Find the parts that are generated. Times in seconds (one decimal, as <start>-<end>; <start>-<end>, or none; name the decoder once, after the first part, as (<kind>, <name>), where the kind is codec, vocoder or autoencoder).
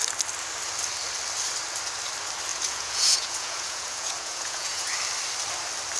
2.5-4.9 (vocoder, Vocos)